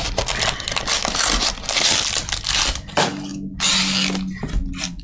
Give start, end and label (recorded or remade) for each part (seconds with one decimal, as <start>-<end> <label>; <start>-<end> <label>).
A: 0.0-5.0 recorded